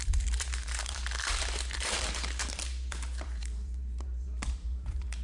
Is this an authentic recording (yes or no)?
no